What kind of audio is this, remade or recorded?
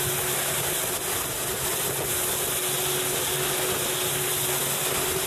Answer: recorded